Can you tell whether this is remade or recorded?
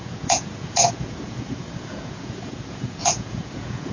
remade